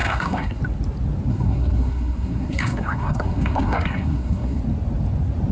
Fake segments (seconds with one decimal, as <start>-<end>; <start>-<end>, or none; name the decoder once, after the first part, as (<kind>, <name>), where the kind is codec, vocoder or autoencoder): 0.0-0.6 (codec, SNAC); 1.3-4.6